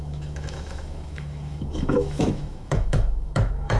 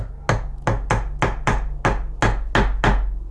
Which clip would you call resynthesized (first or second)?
first